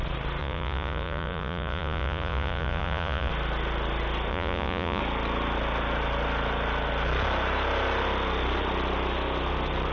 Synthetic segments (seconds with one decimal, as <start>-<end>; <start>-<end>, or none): 0.4-3.3; 4.3-5.0